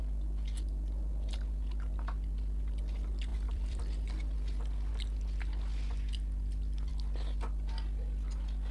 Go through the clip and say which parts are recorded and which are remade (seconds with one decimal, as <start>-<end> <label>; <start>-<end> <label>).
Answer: 0.0-3.3 recorded; 3.3-3.8 remade; 3.8-8.7 recorded